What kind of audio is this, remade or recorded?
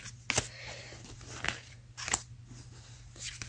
recorded